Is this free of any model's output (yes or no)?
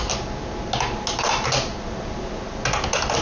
yes